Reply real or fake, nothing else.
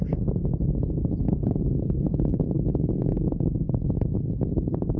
fake